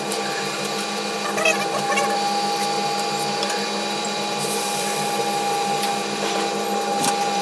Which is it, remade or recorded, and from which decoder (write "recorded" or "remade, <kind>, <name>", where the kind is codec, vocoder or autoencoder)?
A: recorded